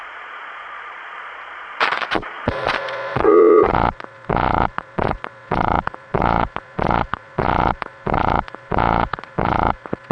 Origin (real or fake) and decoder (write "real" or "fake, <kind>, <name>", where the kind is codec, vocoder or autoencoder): fake, vocoder, Vocos